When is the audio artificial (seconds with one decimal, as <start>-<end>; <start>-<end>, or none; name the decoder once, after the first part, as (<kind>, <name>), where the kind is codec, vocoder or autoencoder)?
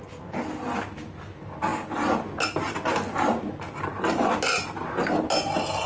none